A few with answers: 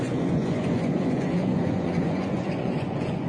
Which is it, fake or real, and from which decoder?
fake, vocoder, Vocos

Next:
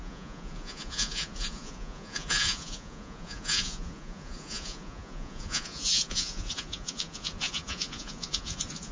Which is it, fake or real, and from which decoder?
fake, vocoder, Vocos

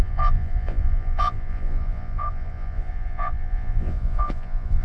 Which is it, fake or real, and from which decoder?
fake, vocoder, Vocos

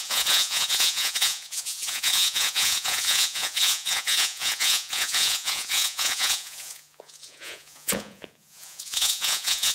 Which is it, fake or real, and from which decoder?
fake, vocoder, Vocos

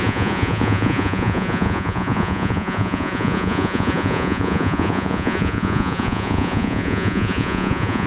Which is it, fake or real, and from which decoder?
fake, vocoder, Vocos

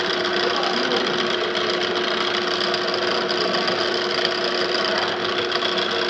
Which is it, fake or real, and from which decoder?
real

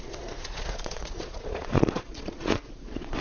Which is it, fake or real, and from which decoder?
fake, vocoder, Vocos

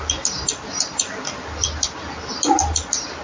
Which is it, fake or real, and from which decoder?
real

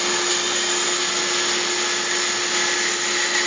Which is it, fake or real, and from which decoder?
real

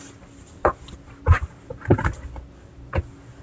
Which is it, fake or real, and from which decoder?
real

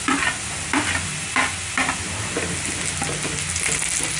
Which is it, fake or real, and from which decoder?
real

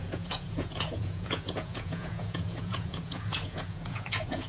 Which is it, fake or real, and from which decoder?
fake, vocoder, Vocos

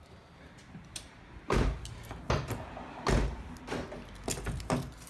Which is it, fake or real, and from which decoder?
real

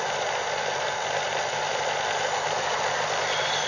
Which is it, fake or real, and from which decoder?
real